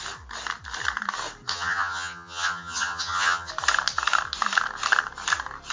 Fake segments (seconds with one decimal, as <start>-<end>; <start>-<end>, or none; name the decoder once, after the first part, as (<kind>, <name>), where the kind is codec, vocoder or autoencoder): 1.5-3.5 (vocoder, HiFi-GAN)